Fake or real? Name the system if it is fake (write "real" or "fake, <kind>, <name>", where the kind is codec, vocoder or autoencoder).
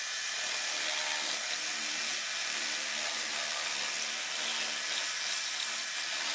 real